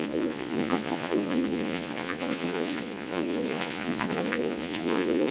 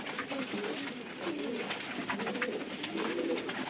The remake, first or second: first